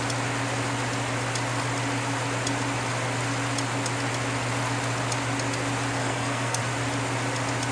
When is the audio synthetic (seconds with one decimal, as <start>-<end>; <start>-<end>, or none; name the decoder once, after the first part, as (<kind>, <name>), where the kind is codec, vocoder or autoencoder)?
6.0-6.6 (codec, SNAC)